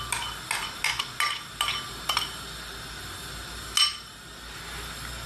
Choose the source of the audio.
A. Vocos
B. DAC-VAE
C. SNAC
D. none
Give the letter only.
D